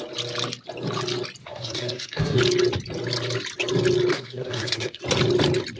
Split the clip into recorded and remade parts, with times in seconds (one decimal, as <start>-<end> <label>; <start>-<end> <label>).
0.0-1.4 recorded; 1.4-2.4 remade; 2.4-4.1 recorded; 4.1-5.0 remade; 5.0-5.8 recorded